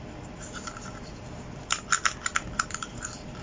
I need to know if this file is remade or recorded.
recorded